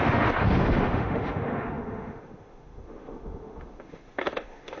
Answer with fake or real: fake